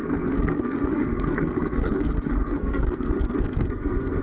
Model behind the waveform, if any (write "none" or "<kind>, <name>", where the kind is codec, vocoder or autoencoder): codec, SNAC